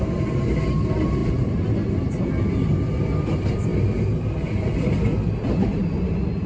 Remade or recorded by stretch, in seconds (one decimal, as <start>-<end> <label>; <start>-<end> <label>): 0.0-6.5 recorded

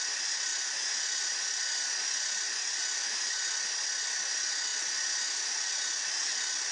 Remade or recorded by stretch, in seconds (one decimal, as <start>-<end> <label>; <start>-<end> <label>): 0.0-6.7 recorded

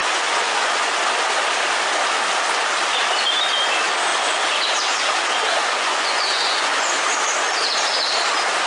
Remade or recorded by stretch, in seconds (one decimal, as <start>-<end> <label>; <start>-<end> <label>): 0.0-0.9 remade; 0.9-4.1 recorded; 4.1-4.6 remade; 4.6-5.6 recorded; 5.6-7.0 remade; 7.0-8.7 recorded

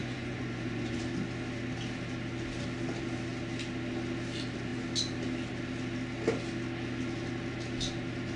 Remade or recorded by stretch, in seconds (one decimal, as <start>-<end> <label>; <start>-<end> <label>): 0.0-1.0 remade; 1.0-8.4 recorded

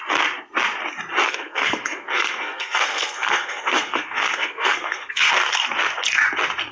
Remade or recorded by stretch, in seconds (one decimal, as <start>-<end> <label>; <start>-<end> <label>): 0.0-1.3 recorded; 1.3-5.3 remade; 5.3-6.7 recorded